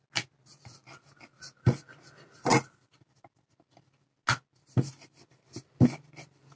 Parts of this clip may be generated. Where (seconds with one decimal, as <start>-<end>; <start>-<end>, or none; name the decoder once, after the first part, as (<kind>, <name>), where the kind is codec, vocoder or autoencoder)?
none